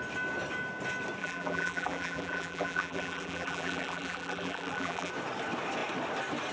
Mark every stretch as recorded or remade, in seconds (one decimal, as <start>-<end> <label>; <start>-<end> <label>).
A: 0.0-1.2 recorded; 1.2-5.1 remade; 5.1-6.5 recorded